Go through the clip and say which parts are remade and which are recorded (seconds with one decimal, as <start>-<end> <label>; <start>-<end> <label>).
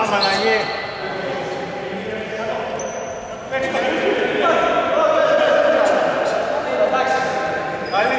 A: 0.0-8.2 recorded